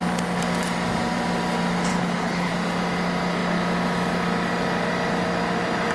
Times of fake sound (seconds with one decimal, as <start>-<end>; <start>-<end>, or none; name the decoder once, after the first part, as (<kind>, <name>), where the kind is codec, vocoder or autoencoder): 1.9-2.5 (codec, HILCodec)